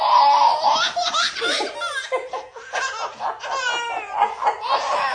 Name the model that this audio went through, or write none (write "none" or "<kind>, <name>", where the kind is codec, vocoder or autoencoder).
none